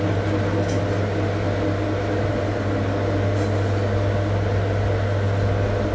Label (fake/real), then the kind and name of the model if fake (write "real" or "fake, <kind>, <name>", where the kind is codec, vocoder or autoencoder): real